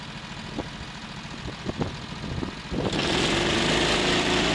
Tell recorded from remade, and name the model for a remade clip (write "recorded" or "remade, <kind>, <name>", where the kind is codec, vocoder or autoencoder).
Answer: recorded